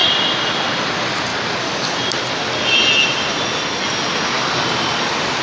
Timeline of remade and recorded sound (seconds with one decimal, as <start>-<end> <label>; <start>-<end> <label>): 0.0-0.5 remade; 0.5-5.4 recorded